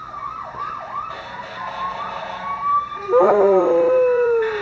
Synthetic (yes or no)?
yes